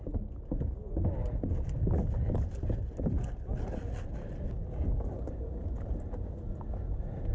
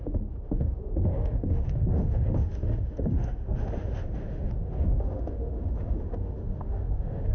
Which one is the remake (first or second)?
second